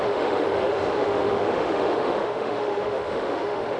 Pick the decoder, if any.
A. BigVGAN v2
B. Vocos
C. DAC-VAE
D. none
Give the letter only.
C